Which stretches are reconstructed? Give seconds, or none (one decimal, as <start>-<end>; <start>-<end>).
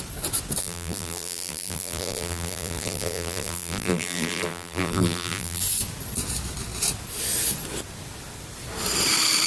0.6-5.6